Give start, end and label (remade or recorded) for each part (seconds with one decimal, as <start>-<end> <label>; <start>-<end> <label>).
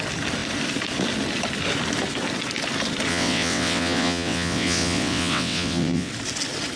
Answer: 0.0-3.1 recorded; 3.1-6.1 remade; 6.1-6.8 recorded